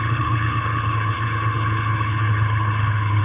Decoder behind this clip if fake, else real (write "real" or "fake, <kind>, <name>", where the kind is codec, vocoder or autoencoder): fake, codec, HILCodec